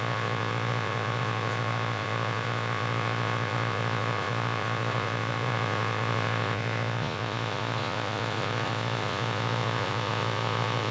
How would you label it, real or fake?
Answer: fake